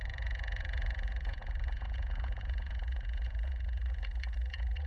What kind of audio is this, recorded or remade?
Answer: remade